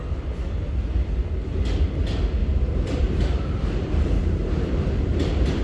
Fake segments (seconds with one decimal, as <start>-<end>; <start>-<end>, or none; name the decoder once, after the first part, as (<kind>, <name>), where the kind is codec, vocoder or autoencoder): 2.4-5.6 (vocoder, BigVGAN v2)